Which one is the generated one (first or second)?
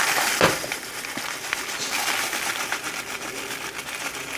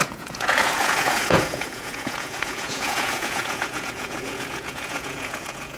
second